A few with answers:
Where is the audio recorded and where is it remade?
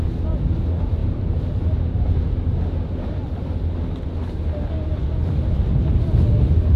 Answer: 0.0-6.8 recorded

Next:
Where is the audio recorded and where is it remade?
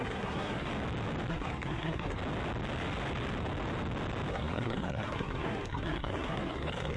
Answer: 0.0-0.7 remade; 0.7-1.3 recorded; 1.3-2.2 remade; 2.2-4.3 recorded; 4.3-7.0 remade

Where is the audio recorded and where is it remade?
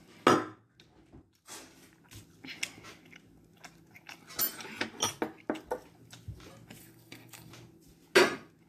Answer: 0.0-6.8 recorded; 6.8-7.5 remade; 7.5-8.7 recorded